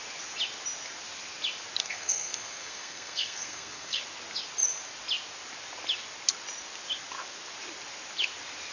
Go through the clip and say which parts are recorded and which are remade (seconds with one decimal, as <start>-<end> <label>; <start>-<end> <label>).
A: 0.0-1.8 recorded; 1.8-4.0 remade; 4.0-8.7 recorded